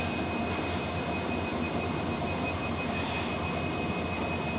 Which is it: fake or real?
real